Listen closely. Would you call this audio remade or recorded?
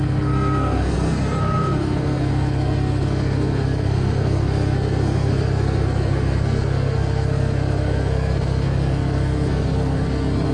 remade